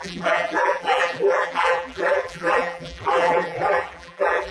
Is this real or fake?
fake